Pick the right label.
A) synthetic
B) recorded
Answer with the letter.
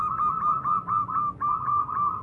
B